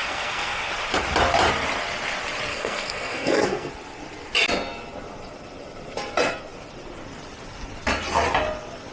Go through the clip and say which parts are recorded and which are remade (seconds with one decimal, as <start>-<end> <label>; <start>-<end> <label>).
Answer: 0.0-0.7 remade; 0.7-2.5 recorded; 2.5-3.7 remade; 3.7-8.9 recorded